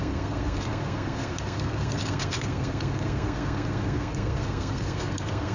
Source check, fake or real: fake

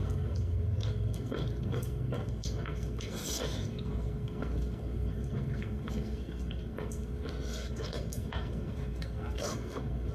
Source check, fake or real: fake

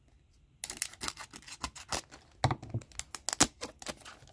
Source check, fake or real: real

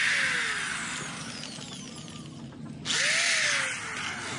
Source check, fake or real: real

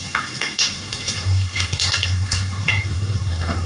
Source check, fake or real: fake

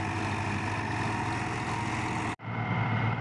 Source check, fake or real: real